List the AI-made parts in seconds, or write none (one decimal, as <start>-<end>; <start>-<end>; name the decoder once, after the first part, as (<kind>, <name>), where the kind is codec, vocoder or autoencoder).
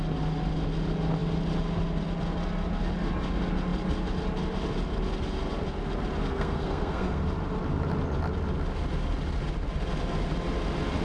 6.2-7.2 (codec, SNAC)